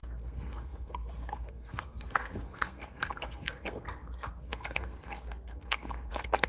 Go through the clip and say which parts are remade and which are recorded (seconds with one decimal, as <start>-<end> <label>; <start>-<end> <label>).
0.0-6.5 remade